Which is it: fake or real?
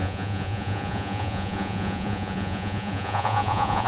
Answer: fake